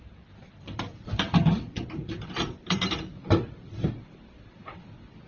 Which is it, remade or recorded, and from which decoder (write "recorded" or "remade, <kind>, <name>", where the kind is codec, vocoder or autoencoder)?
remade, vocoder, BigVGAN v2